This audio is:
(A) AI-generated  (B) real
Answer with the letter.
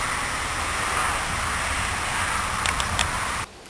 B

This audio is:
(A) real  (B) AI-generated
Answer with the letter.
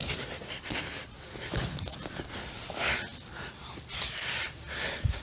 B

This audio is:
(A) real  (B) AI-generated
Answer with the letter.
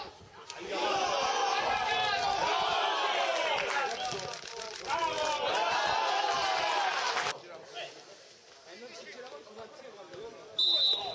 A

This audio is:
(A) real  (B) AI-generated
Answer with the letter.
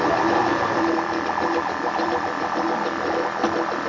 A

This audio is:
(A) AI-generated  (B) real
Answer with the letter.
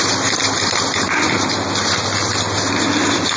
B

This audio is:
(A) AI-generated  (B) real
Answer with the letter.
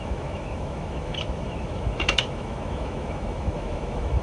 A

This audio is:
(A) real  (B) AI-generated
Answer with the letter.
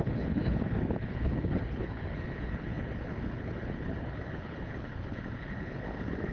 B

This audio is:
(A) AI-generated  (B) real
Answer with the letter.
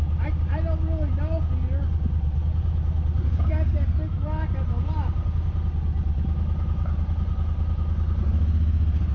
B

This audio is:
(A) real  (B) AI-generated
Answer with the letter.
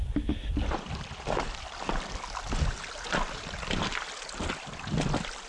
A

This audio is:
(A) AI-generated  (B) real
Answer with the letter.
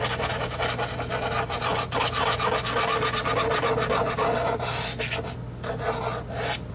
B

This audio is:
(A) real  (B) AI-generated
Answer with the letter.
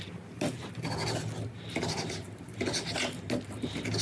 A